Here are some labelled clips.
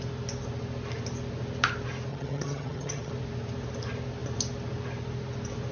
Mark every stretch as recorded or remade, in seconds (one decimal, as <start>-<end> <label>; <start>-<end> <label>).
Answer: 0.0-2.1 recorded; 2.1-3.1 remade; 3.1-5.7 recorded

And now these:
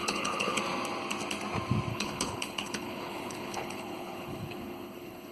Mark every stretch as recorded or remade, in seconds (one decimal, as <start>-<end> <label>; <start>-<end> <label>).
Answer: 0.0-0.6 remade; 0.6-1.9 recorded; 1.9-5.3 remade

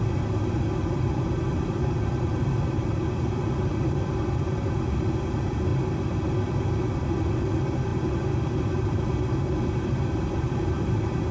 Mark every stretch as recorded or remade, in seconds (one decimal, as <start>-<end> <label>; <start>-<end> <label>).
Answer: 0.0-3.7 recorded; 3.7-4.5 remade; 4.5-11.3 recorded

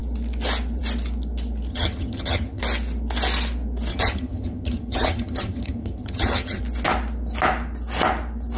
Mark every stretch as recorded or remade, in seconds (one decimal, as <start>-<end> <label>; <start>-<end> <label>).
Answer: 0.0-1.7 recorded; 1.7-2.6 remade; 2.6-3.9 recorded; 3.9-6.6 remade; 6.6-8.6 recorded

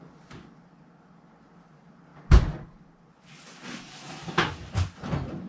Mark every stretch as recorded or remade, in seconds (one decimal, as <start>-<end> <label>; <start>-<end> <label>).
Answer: 0.0-5.5 recorded

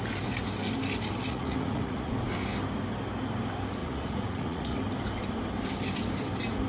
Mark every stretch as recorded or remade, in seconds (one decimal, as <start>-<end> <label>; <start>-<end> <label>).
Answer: 0.0-1.3 recorded; 1.3-2.1 remade; 2.1-3.8 recorded; 3.8-4.8 remade; 4.8-6.7 recorded

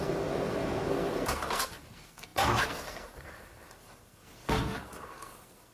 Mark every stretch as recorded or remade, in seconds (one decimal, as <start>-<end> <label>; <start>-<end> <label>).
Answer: 0.0-5.7 remade

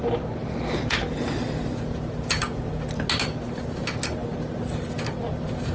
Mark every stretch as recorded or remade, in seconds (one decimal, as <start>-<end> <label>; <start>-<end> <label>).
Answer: 0.0-5.7 recorded